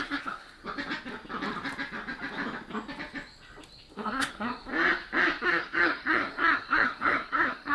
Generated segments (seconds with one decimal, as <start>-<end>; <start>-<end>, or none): 0.0-0.6; 3.9-4.7; 5.4-7.7